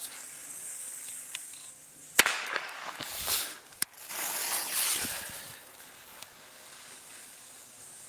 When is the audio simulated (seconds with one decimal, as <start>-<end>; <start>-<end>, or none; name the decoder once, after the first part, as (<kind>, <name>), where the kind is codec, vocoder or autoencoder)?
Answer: 0.0-4.4 (codec, DAC); 5.5-8.1